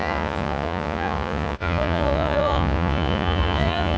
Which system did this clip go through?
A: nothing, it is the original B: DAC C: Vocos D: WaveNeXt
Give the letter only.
C